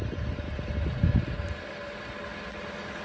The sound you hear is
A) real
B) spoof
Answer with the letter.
A